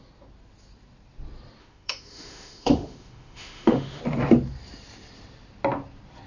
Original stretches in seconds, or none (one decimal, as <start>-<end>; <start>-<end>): 0.0-1.6; 4.0-6.3